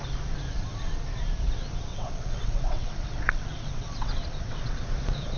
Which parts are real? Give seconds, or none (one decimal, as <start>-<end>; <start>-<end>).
0.0-1.9; 4.8-5.4

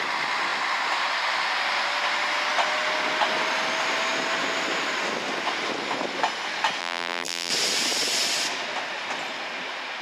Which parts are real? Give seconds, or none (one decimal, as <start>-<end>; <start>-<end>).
0.0-6.8; 7.5-10.0

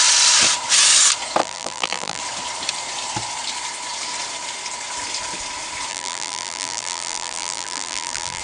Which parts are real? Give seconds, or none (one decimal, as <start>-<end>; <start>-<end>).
0.0-1.4; 2.2-5.9